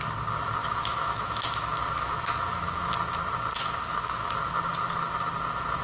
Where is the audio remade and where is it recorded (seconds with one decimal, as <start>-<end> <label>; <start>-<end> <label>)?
0.0-0.6 recorded; 0.6-2.9 remade; 2.9-3.5 recorded; 3.5-4.4 remade; 4.4-5.8 recorded